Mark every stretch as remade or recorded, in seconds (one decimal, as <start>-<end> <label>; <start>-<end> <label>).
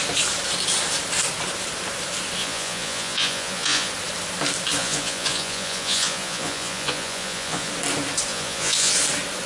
0.0-2.4 recorded; 2.4-3.9 remade; 3.9-4.8 recorded; 4.8-7.7 remade; 7.7-8.3 recorded; 8.3-8.9 remade; 8.9-9.5 recorded